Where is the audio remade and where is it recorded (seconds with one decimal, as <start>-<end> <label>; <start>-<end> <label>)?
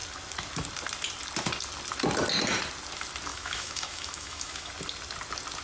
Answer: 0.0-3.3 recorded; 3.3-4.7 remade; 4.7-5.6 recorded